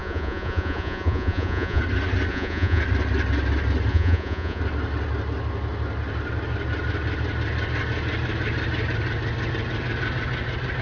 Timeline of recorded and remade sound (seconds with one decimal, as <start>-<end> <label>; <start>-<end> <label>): 0.0-1.8 remade; 1.8-2.3 recorded; 2.3-2.8 remade; 2.8-3.9 recorded; 3.9-4.6 remade; 4.6-10.8 recorded